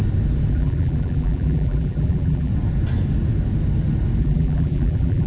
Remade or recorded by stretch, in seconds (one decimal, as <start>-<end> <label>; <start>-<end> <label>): 0.0-0.5 recorded; 0.5-2.5 remade; 2.5-4.2 recorded; 4.2-5.3 remade